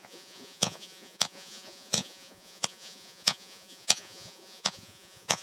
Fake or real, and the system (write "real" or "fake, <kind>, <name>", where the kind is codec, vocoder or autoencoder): fake, vocoder, Vocos